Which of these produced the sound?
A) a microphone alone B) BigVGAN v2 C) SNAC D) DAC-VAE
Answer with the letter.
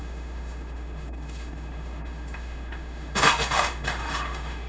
D